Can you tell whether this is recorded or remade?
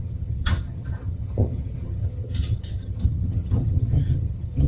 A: remade